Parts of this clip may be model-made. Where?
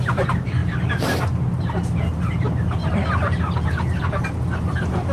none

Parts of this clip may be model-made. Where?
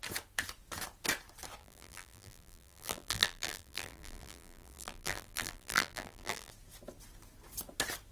1.6-6.5 (vocoder, BigVGAN v2)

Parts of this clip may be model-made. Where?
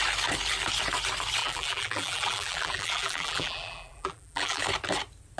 1.4-4.6 (vocoder, BigVGAN v2)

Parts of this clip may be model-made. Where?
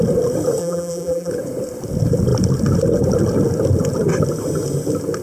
0.6-1.3 (vocoder, BigVGAN v2)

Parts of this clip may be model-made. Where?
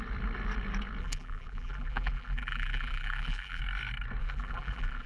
1.0-3.6 (vocoder, BigVGAN v2); 4.2-5.1